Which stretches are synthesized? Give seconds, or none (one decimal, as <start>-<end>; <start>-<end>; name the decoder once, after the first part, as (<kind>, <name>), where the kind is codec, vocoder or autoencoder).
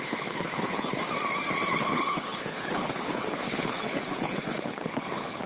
0.0-1.0 (codec, HILCodec); 1.7-5.5